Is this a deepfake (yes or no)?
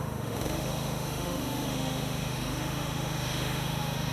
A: yes